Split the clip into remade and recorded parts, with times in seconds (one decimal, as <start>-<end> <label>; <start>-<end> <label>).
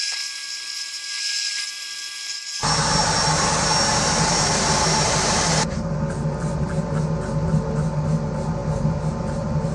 0.0-9.7 recorded